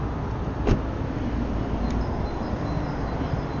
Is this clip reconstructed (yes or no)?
no